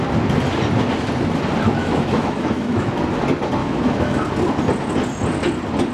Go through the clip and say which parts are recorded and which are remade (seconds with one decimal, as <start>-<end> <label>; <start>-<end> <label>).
0.0-1.8 recorded; 1.8-2.9 remade; 2.9-3.6 recorded; 3.6-4.2 remade; 4.2-5.9 recorded